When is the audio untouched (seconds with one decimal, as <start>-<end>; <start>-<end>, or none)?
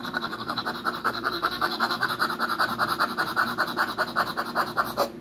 0.6-1.0; 2.1-5.2